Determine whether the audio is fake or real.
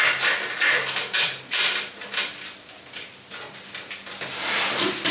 real